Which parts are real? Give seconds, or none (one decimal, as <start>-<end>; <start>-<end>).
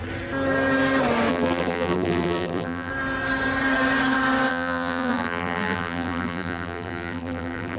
0.0-1.3; 2.9-4.5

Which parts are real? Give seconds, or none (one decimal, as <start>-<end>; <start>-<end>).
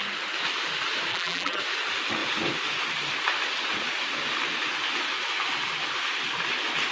0.0-1.1; 1.6-6.9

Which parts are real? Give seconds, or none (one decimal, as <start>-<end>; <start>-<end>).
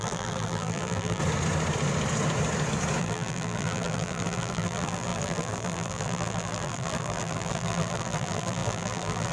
1.2-3.0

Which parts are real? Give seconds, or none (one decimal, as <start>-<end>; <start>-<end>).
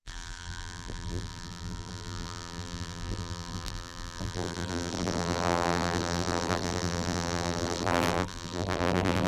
none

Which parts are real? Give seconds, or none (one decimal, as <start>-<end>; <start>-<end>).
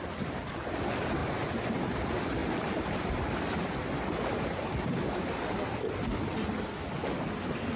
0.5-2.4; 5.6-7.8